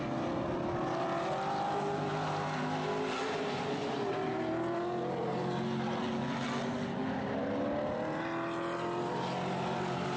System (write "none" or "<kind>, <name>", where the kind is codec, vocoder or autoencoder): none